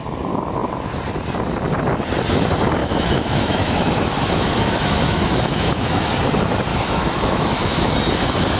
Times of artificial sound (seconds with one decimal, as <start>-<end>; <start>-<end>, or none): 2.8-6.1; 6.7-7.9